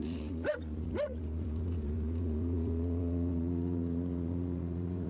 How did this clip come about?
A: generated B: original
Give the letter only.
A